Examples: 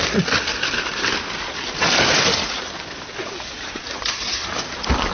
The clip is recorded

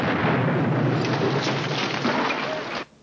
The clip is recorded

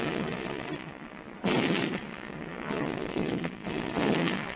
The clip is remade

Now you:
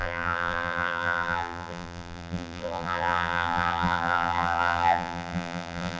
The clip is remade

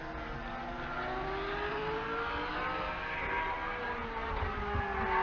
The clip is recorded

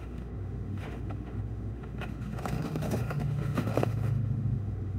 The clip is remade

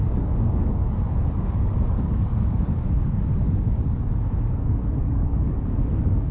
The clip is remade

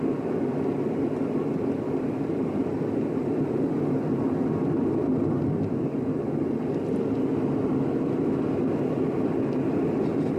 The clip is recorded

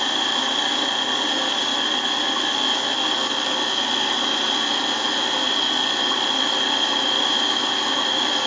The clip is remade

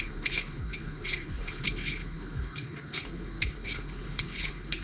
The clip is remade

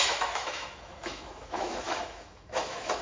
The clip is remade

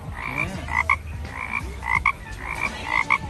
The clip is recorded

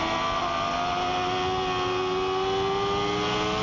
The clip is recorded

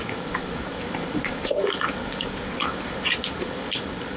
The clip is remade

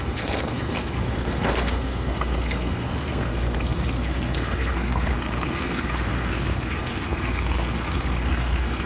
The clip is remade